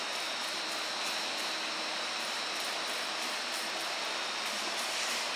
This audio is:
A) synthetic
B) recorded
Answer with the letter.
B